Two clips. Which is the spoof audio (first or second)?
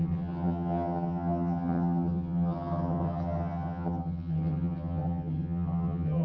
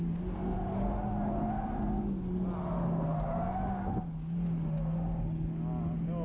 first